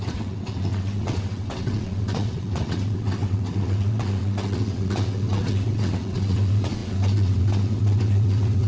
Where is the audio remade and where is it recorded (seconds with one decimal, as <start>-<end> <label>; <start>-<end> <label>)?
0.0-8.7 remade